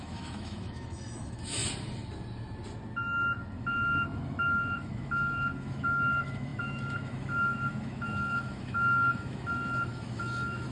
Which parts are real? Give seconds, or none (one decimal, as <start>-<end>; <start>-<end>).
1.6-3.6